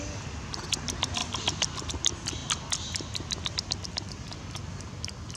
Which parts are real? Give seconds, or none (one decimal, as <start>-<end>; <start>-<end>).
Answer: 0.0-5.4